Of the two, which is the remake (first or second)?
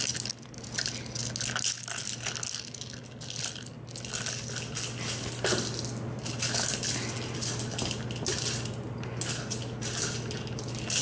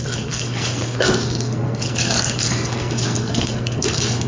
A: second